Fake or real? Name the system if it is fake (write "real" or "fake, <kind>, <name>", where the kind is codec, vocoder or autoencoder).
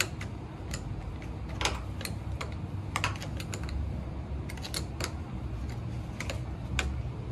real